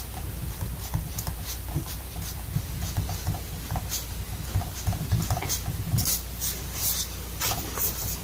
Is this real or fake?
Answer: fake